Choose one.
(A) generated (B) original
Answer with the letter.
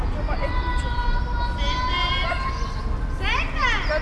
B